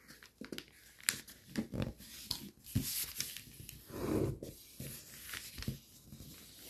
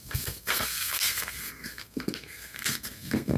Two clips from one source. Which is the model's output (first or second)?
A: second